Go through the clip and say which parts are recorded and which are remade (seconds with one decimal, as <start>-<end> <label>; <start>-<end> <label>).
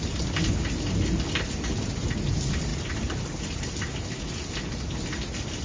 0.0-5.6 recorded